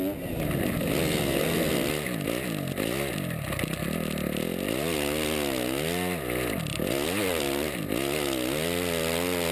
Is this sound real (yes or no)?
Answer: yes